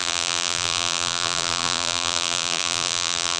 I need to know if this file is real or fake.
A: fake